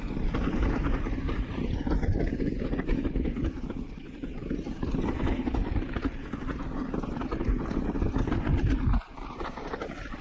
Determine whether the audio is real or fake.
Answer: fake